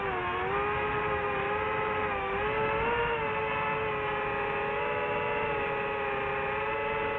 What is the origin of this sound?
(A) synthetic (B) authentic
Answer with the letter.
B